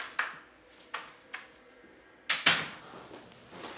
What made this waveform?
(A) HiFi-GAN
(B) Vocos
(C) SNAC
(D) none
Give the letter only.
D